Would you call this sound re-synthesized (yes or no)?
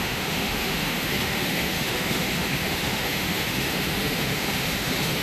yes